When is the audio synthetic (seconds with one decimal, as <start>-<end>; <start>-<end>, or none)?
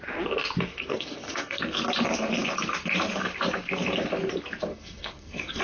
0.7-1.6; 4.7-5.6